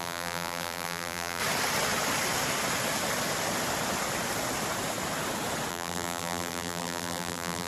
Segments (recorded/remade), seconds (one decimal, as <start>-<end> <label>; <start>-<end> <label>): 0.0-1.4 remade; 1.4-5.7 recorded; 5.7-7.7 remade